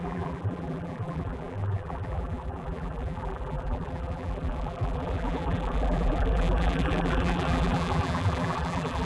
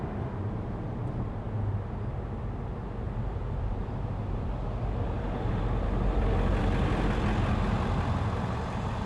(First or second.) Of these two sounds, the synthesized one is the first